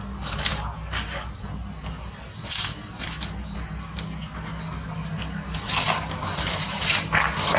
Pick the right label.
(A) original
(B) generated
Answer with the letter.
A